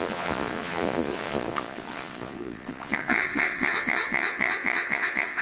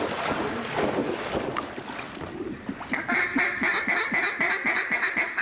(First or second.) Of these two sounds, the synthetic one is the first